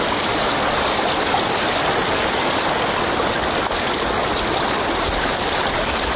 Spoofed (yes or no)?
no